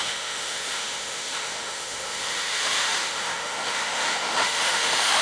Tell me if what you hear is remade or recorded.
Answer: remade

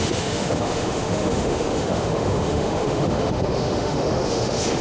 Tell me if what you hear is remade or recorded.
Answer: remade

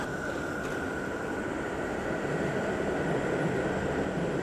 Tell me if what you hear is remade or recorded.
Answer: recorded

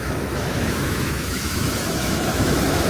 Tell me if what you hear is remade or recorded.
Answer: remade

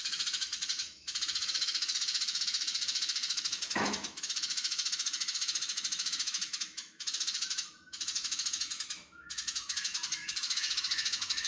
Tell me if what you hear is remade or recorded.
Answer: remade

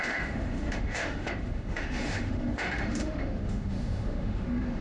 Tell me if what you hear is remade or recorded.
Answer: remade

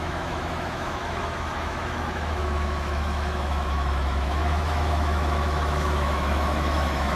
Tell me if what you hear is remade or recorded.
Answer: remade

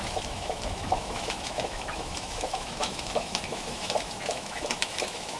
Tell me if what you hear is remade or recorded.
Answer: remade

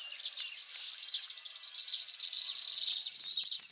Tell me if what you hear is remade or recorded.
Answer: recorded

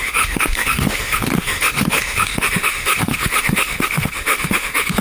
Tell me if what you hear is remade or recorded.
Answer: remade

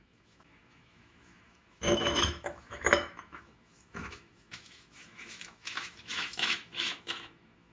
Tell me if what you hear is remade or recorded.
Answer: remade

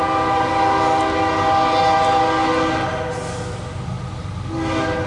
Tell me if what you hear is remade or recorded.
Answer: recorded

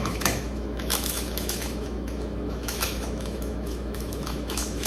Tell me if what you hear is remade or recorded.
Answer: remade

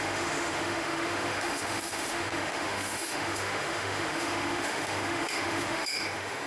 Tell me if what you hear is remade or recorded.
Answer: remade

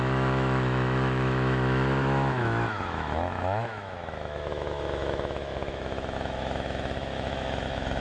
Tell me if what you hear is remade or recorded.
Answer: remade